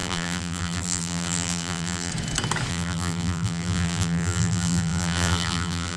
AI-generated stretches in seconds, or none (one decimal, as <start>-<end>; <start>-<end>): 0.0-2.1; 2.7-6.0